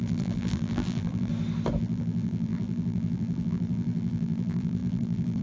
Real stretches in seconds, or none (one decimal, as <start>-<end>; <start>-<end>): 1.3-1.8